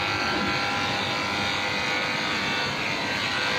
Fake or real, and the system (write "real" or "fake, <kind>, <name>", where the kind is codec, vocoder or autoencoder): real